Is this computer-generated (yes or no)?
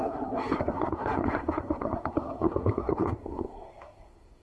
yes